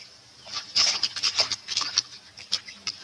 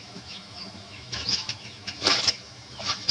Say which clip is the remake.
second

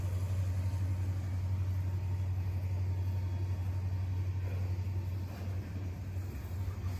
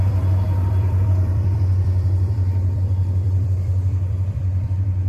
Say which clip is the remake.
second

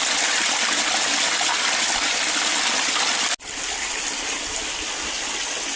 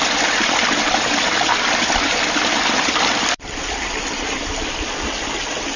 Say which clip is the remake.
second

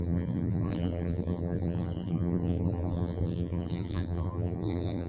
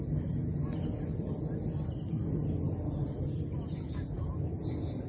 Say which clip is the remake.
first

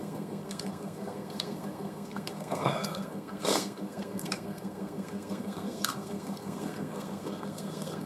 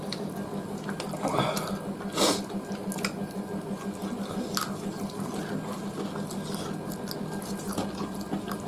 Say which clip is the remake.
first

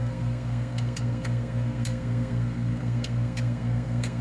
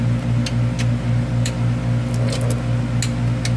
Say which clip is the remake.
first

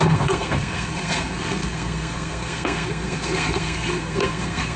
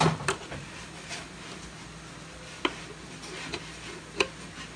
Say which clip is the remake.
first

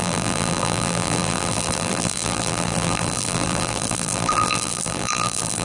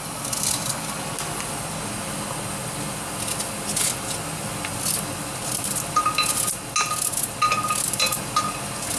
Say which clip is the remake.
first